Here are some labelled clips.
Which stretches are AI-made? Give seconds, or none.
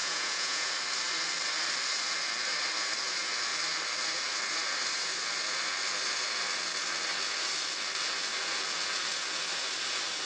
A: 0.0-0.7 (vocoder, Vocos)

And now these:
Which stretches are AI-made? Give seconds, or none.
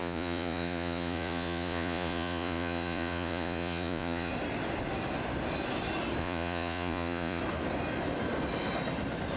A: 0.0-4.3 (vocoder, Vocos); 6.2-7.4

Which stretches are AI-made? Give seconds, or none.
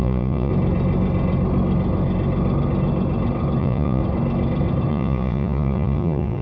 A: 0.0-0.5 (vocoder, Vocos); 3.6-4.0; 4.9-6.4